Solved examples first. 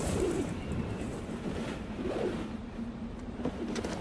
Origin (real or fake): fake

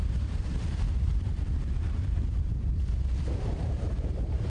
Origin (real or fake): fake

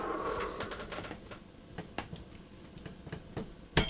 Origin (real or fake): real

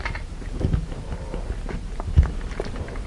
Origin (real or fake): fake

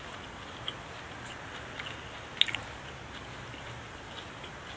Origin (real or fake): real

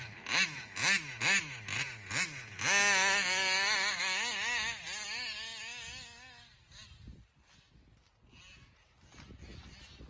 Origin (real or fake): real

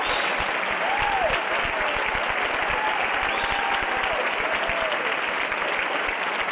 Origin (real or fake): real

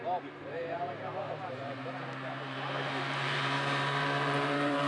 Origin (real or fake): fake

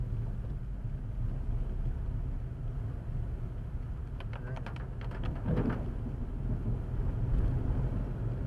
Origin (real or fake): real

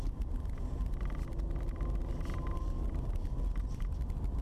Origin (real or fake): fake